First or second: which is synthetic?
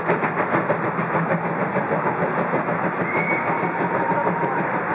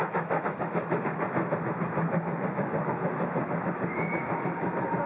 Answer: second